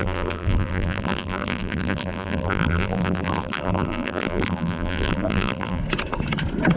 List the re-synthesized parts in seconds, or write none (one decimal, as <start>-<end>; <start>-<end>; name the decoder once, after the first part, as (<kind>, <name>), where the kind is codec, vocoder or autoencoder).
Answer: 0.0-5.8 (vocoder, BigVGAN v2)